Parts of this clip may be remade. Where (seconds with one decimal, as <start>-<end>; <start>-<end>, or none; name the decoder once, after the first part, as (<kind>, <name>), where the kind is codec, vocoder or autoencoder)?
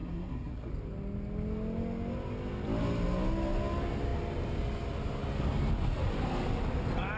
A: 0.0-0.7 (codec, SNAC)